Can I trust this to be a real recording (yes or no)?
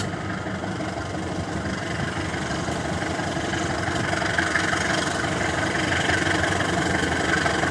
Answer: yes